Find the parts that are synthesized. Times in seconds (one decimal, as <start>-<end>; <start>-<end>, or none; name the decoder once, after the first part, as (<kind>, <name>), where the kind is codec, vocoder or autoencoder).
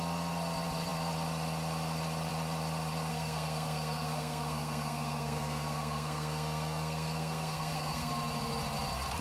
3.1-8.1 (codec, SNAC)